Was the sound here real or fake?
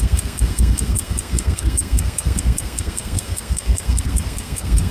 fake